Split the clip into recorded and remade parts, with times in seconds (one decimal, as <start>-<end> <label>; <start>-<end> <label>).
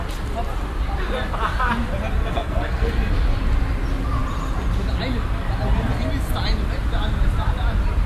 0.0-2.2 recorded; 2.2-3.1 remade; 3.1-8.1 recorded